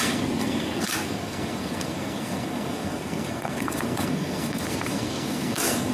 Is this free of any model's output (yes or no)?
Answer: no